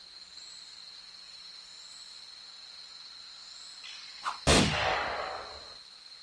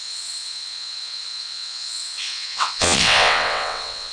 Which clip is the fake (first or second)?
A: second